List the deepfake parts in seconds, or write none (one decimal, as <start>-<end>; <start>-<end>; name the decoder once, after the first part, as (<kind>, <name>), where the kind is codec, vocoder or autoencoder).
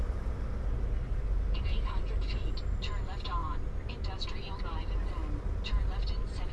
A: none